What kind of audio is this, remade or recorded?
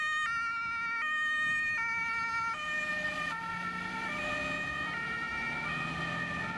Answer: recorded